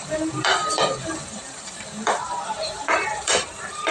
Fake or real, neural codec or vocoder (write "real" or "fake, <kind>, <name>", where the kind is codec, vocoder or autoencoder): fake, vocoder, BigVGAN v2